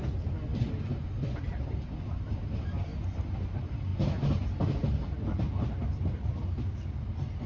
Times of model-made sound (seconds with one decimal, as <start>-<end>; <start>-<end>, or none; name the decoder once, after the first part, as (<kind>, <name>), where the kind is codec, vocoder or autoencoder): 0.0-2.9 (vocoder, BigVGAN v2); 3.5-3.9